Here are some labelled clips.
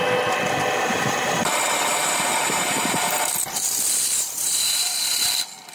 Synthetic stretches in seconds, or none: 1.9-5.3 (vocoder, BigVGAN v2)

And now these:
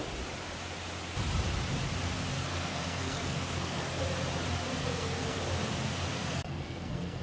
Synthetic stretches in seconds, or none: 2.3-4.0 (codec, SNAC); 4.8-5.4; 6.1-7.2

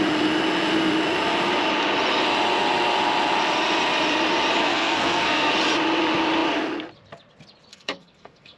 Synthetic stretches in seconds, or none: 4.6-5.5 (codec, SNAC); 7.7-8.6

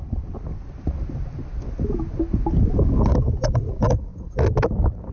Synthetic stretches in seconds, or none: none

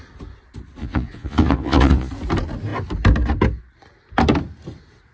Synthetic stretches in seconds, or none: 0.8-2.1 (vocoder, Vocos)

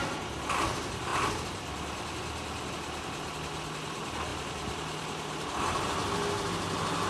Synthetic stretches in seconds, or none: 4.3-5.6 (vocoder, BigVGAN v2)

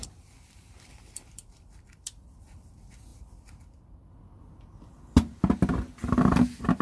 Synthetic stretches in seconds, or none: 0.0-2.7 (vocoder, BigVGAN v2)